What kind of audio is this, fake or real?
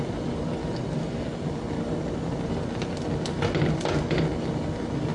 real